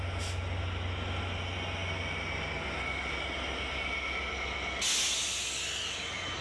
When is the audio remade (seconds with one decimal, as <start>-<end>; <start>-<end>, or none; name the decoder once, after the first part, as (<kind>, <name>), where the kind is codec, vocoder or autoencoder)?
none